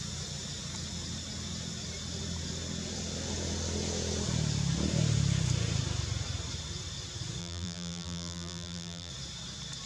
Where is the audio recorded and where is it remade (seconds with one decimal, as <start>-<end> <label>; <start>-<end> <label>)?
0.0-7.4 recorded; 7.4-9.1 remade; 9.1-9.9 recorded